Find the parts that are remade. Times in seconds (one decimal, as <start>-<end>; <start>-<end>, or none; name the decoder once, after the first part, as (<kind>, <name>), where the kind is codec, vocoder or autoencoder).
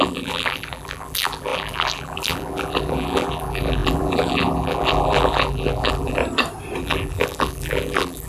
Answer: 0.0-6.2 (vocoder, BigVGAN v2); 6.8-8.3